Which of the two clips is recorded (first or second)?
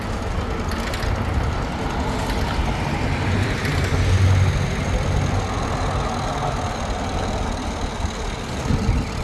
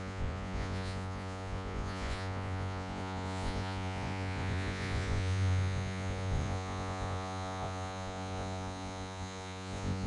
first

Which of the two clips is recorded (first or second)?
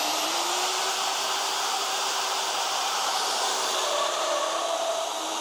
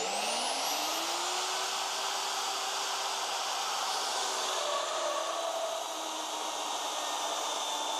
second